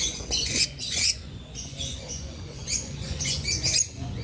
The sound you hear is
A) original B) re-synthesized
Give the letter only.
B